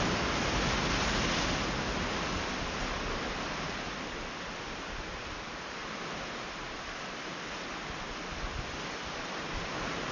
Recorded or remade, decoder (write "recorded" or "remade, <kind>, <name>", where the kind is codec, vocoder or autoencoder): recorded